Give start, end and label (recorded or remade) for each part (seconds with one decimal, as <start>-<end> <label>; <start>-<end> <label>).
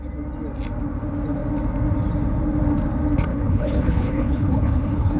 0.0-3.3 recorded; 3.3-5.2 remade